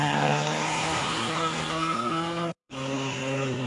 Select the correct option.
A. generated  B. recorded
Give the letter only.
A